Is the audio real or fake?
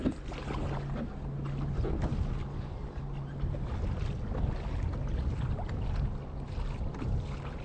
real